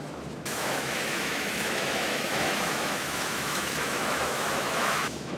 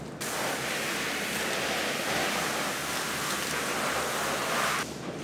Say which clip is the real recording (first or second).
second